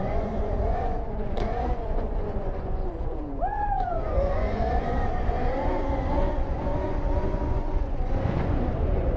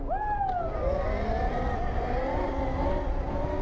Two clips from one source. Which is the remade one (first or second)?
first